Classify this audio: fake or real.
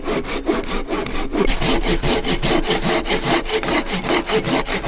real